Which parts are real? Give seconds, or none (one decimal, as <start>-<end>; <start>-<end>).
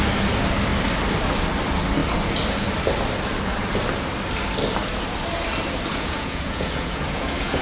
0.0-5.9